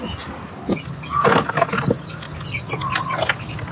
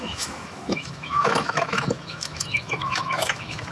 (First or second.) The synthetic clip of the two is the second